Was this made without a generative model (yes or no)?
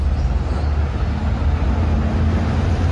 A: yes